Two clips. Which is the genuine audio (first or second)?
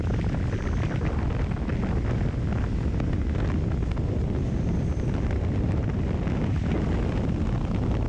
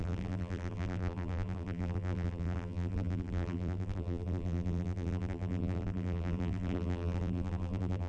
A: first